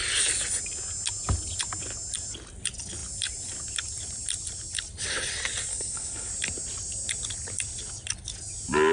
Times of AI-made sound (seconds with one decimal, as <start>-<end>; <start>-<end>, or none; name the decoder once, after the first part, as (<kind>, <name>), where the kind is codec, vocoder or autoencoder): 5.7-6.3 (codec, SNAC)